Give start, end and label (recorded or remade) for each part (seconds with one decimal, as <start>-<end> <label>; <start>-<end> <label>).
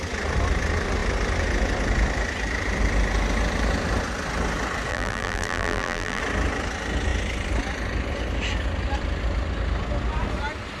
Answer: 0.0-4.9 recorded; 4.9-6.2 remade; 6.2-10.8 recorded